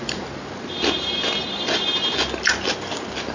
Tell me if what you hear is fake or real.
real